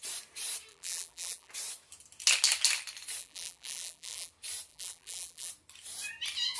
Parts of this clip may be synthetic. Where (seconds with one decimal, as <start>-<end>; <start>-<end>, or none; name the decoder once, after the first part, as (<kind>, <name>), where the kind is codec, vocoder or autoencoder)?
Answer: 0.7-1.5 (vocoder, BigVGAN v2); 3.2-4.3; 4.7-5.5